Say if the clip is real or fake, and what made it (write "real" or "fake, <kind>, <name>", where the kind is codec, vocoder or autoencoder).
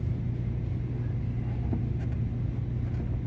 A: real